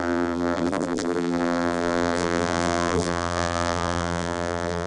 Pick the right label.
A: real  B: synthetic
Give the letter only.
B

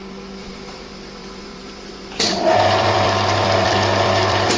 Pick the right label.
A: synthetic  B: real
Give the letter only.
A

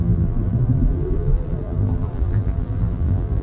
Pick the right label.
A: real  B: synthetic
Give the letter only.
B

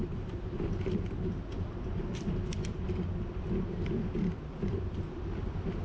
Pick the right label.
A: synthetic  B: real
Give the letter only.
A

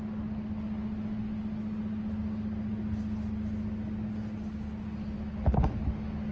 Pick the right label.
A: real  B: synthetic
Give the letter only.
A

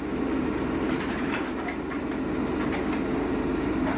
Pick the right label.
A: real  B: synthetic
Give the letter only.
A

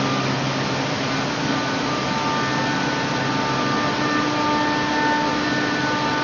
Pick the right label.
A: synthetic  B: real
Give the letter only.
B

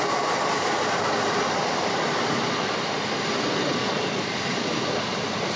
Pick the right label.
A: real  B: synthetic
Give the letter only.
B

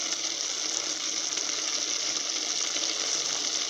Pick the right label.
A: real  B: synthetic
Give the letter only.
A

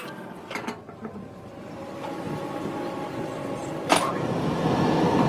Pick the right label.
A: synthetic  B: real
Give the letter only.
A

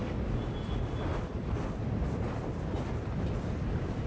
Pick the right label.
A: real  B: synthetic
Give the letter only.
A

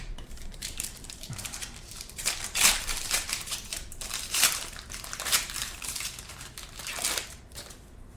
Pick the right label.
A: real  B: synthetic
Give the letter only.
B